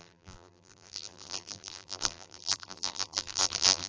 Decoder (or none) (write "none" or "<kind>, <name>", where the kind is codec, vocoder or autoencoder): vocoder, BigVGAN v2